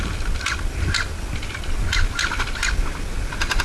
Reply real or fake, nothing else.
real